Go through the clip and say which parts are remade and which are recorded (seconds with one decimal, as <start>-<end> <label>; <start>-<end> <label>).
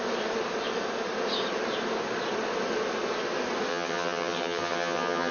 0.0-3.7 recorded; 3.7-5.3 remade